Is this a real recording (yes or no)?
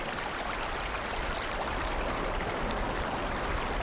yes